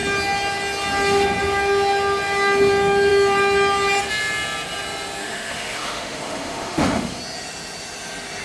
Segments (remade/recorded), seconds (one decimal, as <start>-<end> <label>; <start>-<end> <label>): 0.0-5.2 recorded; 5.2-7.2 remade; 7.2-8.4 recorded